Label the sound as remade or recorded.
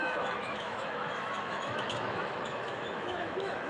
remade